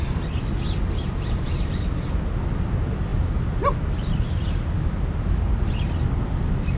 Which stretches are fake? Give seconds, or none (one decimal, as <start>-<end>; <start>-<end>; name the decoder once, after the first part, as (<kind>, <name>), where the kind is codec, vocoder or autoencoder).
none